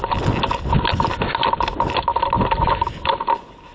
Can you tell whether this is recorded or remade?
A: recorded